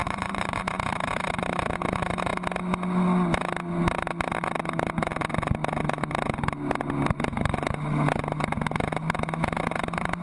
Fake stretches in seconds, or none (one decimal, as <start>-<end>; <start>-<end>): 0.0-0.6